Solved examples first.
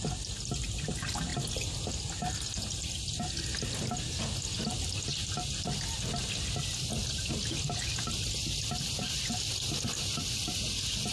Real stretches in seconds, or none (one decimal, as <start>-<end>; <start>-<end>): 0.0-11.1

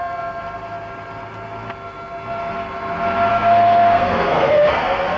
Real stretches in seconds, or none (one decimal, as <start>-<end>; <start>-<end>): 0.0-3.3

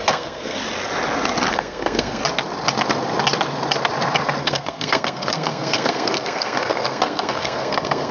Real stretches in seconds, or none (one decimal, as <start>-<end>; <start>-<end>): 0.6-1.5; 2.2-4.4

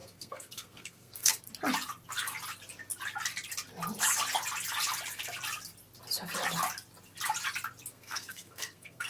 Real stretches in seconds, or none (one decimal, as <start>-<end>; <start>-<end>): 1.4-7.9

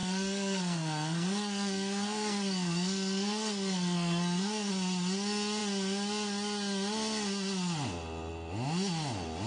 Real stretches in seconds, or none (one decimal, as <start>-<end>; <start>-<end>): 4.7-9.5